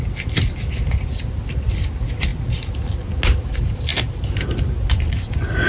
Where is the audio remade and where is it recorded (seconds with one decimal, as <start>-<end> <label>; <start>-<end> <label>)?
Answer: 0.0-5.7 recorded